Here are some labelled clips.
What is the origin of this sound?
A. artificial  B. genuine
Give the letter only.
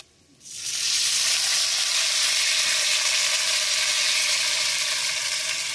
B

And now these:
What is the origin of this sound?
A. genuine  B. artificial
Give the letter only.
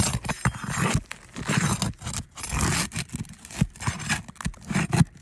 A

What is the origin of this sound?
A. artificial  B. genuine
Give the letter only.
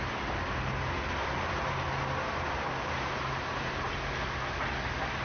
B